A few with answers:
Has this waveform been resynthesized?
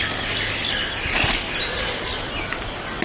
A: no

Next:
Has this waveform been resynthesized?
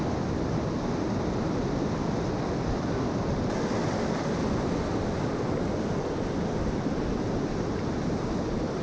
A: no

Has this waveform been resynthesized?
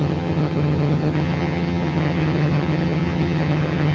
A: yes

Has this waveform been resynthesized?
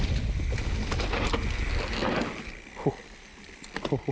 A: no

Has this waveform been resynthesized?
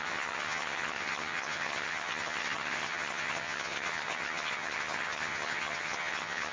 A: yes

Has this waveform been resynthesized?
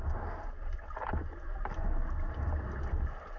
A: no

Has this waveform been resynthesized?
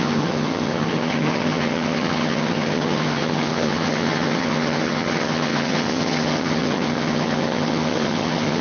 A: yes